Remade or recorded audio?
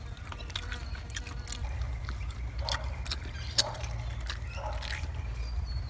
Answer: recorded